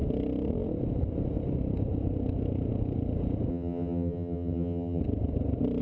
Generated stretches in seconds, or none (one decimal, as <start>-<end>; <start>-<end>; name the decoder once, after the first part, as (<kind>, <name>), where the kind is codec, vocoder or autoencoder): 3.5-5.0 (vocoder, HiFi-GAN)